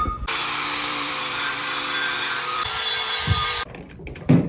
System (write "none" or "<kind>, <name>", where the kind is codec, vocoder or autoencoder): vocoder, BigVGAN v2